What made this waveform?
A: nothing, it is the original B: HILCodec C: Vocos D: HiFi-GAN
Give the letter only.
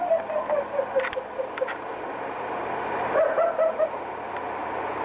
A